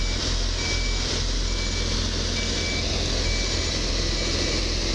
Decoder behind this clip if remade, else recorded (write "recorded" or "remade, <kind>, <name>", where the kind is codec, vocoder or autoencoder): recorded